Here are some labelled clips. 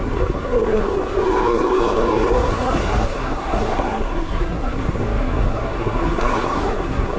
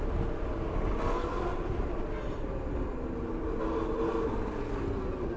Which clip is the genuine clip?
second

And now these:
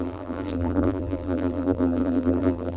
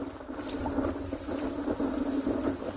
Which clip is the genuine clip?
second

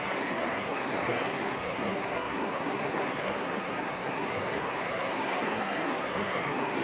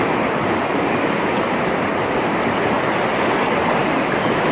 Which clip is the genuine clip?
second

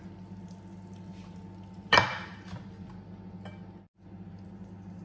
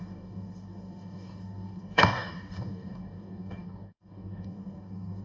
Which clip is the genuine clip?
first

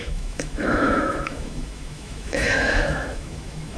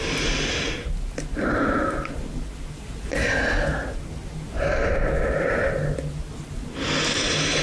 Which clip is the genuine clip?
second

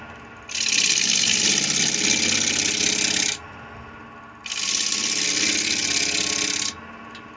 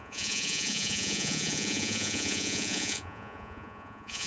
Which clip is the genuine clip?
first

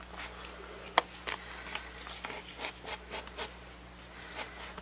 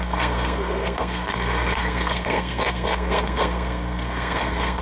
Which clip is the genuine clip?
first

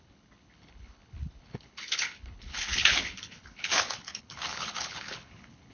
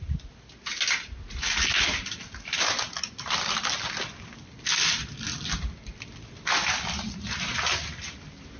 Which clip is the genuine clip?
second